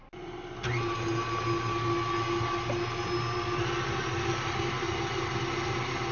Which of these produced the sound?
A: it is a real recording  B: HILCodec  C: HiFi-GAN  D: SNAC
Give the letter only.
A